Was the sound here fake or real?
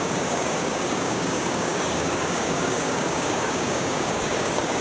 fake